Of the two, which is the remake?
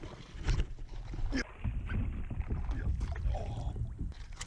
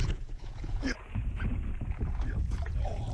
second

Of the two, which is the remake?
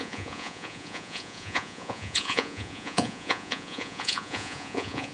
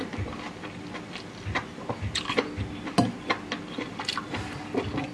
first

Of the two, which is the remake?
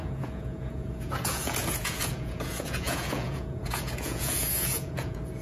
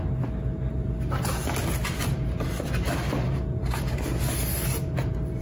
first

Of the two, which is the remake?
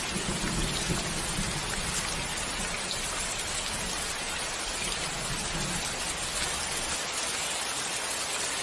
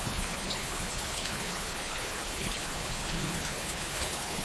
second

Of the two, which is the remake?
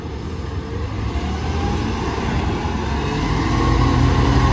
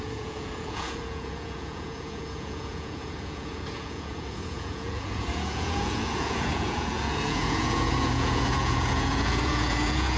second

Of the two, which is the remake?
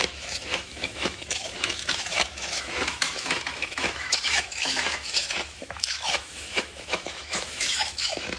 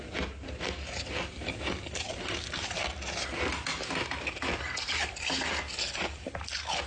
first